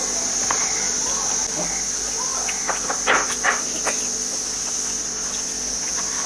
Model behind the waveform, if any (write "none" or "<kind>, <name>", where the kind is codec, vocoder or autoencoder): none